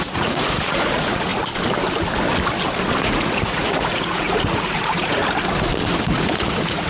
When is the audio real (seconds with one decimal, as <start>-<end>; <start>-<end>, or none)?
1.3-3.0; 5.2-6.0